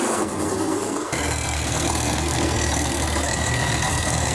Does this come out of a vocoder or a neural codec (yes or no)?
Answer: yes